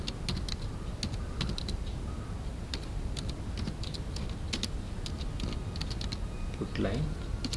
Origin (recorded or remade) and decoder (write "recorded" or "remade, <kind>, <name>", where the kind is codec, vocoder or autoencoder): recorded